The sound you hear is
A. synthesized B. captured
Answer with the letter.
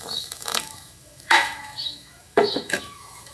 A